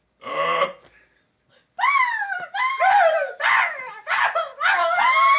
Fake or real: real